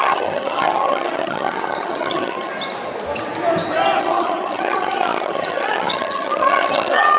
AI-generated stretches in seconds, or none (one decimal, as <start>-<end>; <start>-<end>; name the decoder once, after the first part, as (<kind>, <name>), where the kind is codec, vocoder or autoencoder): 0.0-2.5 (vocoder, HiFi-GAN); 4.0-7.2